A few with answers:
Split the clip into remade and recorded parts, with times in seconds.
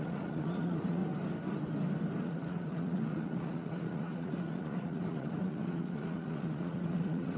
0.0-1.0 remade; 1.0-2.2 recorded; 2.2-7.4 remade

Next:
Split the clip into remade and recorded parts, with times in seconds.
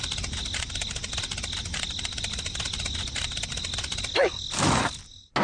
0.0-5.4 recorded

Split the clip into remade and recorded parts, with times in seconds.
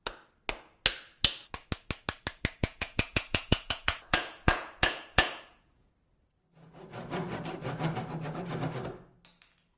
0.0-2.6 recorded; 2.6-5.9 remade; 5.9-9.8 recorded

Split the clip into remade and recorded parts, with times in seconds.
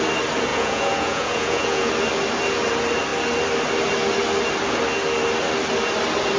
0.0-0.5 recorded; 0.5-1.9 remade; 1.9-6.4 recorded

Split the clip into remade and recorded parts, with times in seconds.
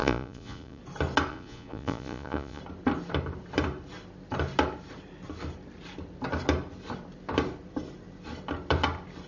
0.0-0.8 remade; 0.8-1.3 recorded; 1.3-2.6 remade; 2.6-9.3 recorded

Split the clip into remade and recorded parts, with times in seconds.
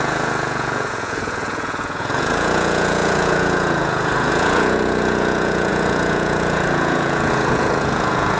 0.0-8.4 remade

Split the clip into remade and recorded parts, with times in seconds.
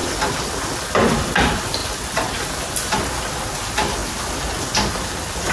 0.0-5.5 recorded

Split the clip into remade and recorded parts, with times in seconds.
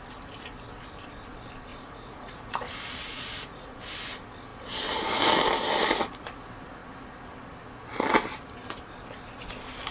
0.0-1.7 recorded; 1.7-2.7 remade; 2.7-3.1 recorded; 3.1-3.8 remade; 3.8-9.9 recorded